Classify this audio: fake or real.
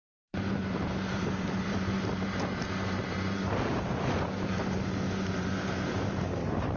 fake